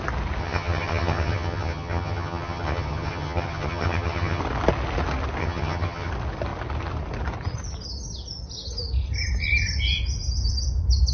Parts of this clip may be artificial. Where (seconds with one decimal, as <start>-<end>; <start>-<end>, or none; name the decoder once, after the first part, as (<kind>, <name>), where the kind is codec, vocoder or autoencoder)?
0.4-4.4 (vocoder, HiFi-GAN); 5.4-6.1